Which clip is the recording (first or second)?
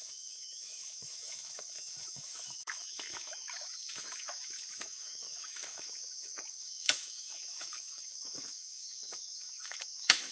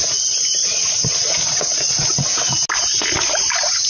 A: second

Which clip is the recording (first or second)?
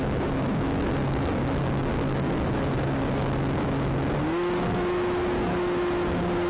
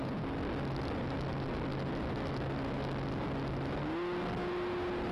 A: second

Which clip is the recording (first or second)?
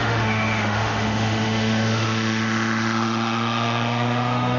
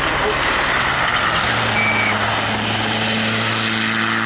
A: second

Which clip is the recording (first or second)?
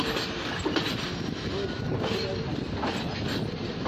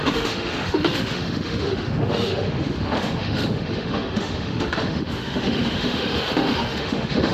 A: first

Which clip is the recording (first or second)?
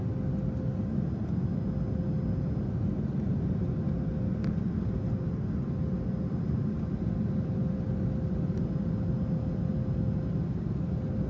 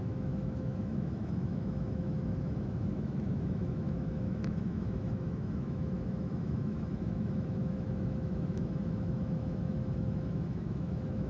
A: first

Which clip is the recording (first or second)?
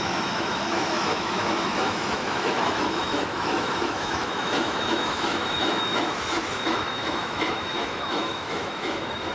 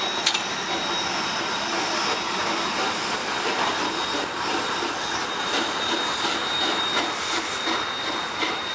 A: second